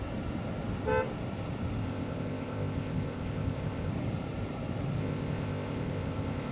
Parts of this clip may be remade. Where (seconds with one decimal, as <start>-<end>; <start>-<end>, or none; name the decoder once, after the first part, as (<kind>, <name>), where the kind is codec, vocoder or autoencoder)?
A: 1.8-3.9 (codec, ZipCodec); 5.0-6.5